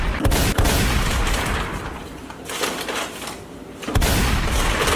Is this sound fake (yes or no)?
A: no